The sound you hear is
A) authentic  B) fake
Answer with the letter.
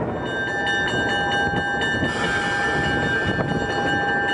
A